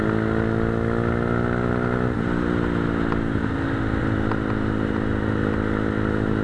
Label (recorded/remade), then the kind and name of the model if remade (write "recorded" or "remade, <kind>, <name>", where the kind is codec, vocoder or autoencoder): recorded